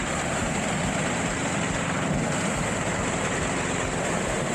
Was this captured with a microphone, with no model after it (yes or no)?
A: no